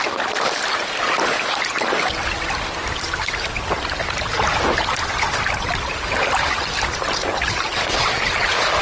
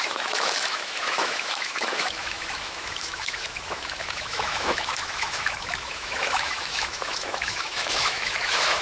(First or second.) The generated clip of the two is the second